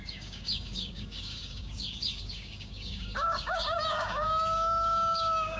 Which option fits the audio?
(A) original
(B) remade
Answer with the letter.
B